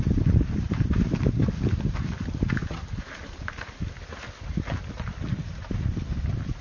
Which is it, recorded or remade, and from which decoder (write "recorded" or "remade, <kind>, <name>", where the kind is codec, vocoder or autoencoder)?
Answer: recorded